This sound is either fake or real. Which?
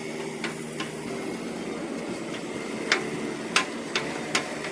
real